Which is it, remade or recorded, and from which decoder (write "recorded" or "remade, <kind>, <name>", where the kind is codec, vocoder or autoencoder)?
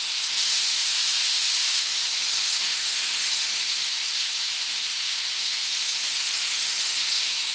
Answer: remade, autoencoder, DAC-VAE